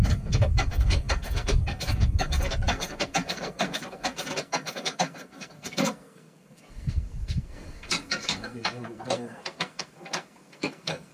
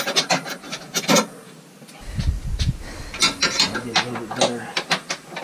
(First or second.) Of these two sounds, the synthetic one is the first